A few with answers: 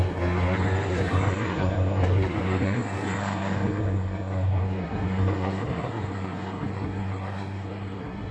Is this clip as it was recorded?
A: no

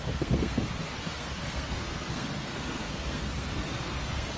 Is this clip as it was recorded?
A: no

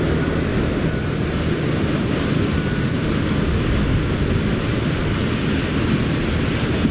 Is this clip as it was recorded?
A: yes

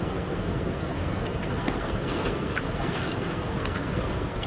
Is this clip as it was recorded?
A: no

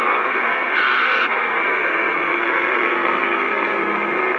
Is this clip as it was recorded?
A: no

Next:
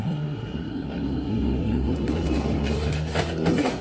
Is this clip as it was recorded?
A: no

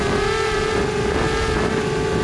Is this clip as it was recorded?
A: yes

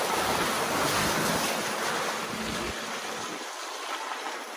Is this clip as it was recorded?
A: yes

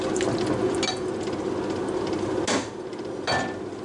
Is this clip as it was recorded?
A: yes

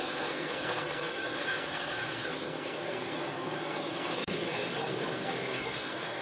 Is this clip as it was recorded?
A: no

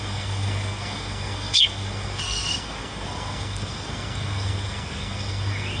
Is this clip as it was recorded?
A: no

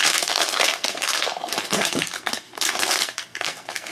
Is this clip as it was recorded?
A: no